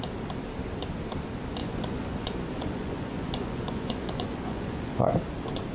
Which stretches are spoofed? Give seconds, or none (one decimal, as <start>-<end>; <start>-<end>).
1.6-5.0